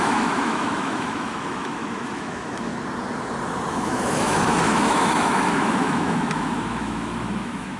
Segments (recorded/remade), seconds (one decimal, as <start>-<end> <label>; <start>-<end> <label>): 0.0-2.7 remade; 2.7-3.7 recorded; 3.7-7.8 remade